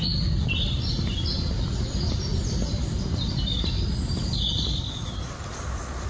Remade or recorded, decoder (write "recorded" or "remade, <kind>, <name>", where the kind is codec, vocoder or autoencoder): recorded